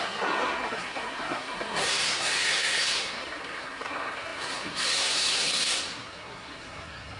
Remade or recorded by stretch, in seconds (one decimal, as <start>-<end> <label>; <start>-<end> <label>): 0.0-7.2 remade